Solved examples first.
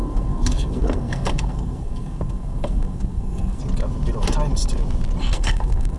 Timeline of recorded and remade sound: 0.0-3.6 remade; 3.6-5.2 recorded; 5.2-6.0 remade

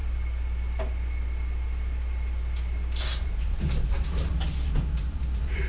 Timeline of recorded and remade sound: 0.0-3.2 recorded; 3.2-5.7 remade

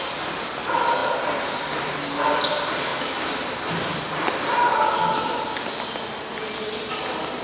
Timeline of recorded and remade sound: 0.0-7.4 recorded

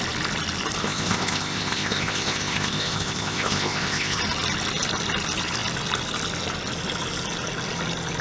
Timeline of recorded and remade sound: 0.0-0.8 recorded; 0.8-4.2 remade; 4.2-8.2 recorded

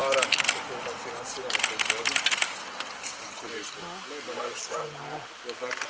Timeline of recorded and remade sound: 0.0-5.9 recorded

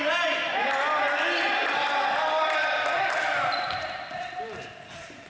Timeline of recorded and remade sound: 0.0-5.3 recorded

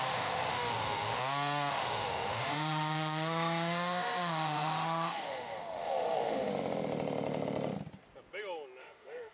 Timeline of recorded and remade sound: 0.0-1.2 remade; 1.2-1.7 recorded; 1.7-6.5 remade; 6.5-8.8 recorded; 8.8-9.3 remade

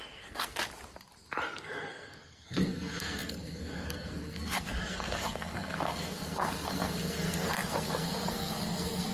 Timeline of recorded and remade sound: 0.0-0.6 remade; 0.6-1.6 recorded; 1.6-9.1 remade